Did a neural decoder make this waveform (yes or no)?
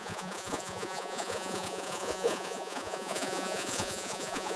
yes